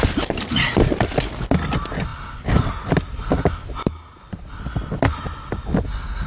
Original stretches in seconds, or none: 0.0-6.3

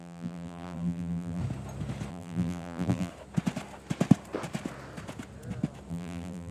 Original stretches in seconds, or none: 1.4-2.1; 3.1-5.9

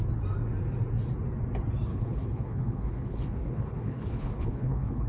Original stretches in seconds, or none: 0.0-1.9

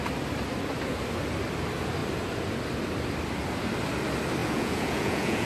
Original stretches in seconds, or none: 0.0-4.4

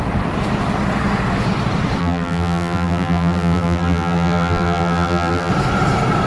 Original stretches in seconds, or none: 0.0-2.0; 5.5-6.3

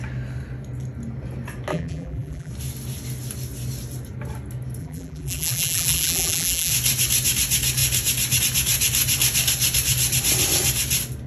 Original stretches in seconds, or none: 0.0-1.7; 2.5-4.8; 6.7-11.3

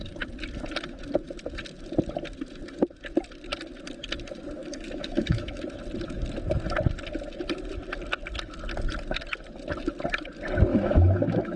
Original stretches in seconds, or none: 0.0-4.6; 5.6-10.7

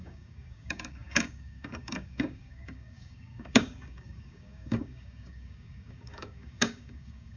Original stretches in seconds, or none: none